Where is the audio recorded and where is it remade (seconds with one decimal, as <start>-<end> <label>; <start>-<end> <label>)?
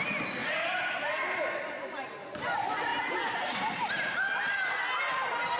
0.0-0.4 recorded; 0.4-1.5 remade; 1.5-2.9 recorded; 2.9-4.5 remade; 4.5-5.6 recorded